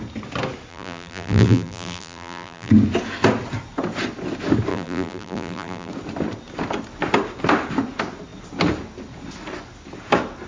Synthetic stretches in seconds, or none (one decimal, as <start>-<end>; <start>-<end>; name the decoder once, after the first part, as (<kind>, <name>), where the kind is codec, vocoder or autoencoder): 0.7-2.7 (vocoder, BigVGAN v2); 4.7-5.9